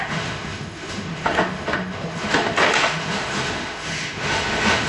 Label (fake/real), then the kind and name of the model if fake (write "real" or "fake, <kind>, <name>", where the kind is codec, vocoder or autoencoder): fake, autoencoder, DAC-VAE